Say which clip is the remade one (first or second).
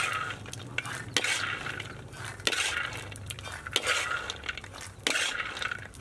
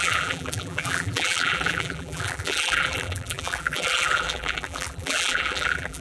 second